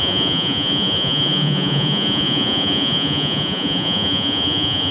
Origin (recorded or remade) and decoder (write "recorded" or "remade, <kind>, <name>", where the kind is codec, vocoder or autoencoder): remade, vocoder, Vocos